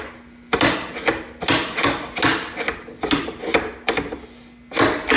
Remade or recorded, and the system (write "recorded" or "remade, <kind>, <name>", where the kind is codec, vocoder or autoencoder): recorded